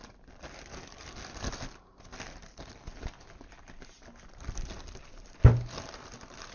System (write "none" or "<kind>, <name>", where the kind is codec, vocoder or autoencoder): none